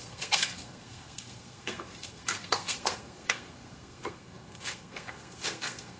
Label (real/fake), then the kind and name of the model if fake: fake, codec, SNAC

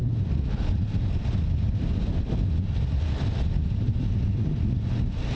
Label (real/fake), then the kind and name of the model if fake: real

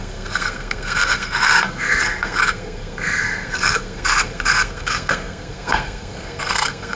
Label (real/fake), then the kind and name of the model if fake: fake, codec, SNAC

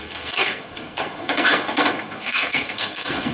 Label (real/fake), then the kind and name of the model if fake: fake, codec, SNAC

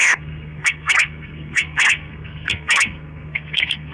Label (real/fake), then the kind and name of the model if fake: fake, codec, SNAC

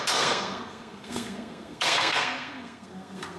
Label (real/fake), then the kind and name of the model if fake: fake, codec, SNAC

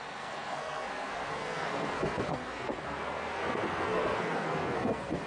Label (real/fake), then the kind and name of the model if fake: fake, codec, SNAC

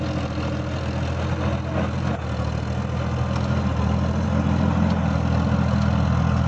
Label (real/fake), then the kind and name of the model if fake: real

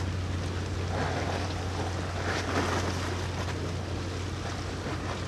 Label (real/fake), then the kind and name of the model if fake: real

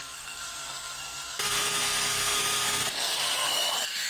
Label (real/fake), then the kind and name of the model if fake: fake, codec, SNAC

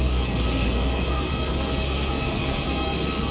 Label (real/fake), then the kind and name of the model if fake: fake, codec, SNAC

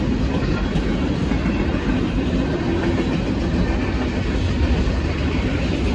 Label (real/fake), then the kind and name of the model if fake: real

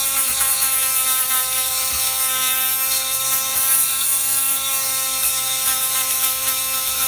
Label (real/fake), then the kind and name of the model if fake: fake, codec, SNAC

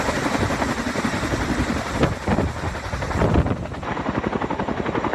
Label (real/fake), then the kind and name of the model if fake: real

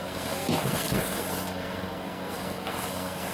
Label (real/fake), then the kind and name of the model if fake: fake, codec, SNAC